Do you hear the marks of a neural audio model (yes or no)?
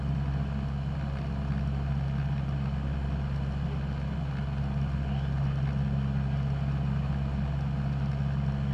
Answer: no